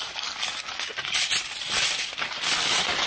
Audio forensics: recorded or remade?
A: recorded